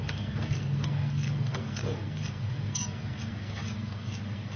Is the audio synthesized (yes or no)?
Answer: yes